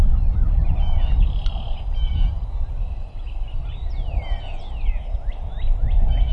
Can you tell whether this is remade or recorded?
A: recorded